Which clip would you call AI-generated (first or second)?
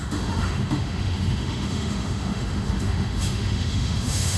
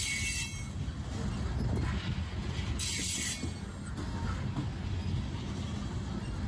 first